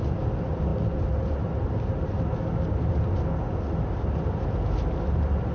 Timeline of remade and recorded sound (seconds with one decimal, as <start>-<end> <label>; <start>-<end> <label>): 0.0-5.5 recorded